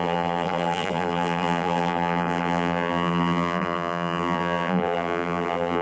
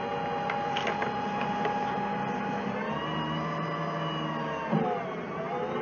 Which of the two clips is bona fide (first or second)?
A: second